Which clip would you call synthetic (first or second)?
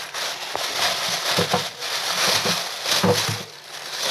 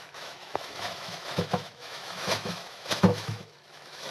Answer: second